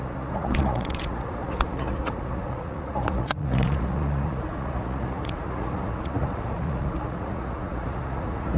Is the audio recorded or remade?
remade